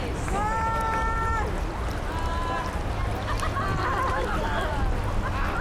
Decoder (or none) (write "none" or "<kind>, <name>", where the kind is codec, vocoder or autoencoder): none